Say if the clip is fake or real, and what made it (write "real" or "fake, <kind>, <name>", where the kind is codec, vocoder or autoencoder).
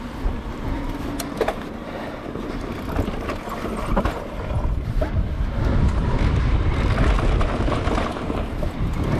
real